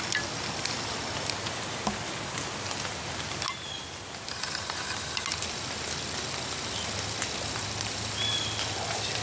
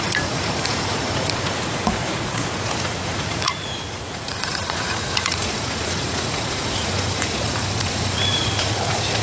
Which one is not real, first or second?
second